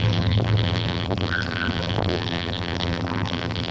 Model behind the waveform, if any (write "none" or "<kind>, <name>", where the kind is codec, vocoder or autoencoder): vocoder, BigVGAN v2